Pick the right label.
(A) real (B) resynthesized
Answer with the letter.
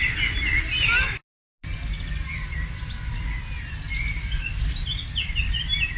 A